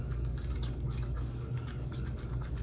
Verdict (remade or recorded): remade